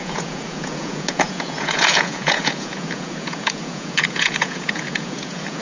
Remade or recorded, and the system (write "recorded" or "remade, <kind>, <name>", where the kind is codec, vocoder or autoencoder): remade, vocoder, Vocos